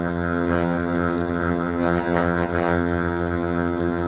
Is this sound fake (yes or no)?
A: yes